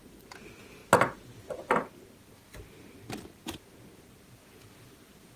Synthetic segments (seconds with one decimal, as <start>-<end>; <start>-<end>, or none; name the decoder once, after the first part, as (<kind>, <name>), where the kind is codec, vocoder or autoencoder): none